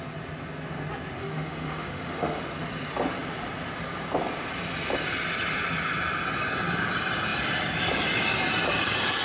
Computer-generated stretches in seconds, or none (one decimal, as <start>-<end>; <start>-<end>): 1.2-2.4